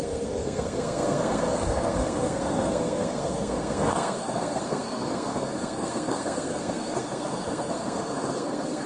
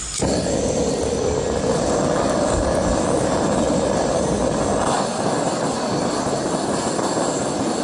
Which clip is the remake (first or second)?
first